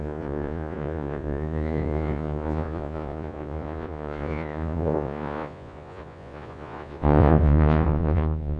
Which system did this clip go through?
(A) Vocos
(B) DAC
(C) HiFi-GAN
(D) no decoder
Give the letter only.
A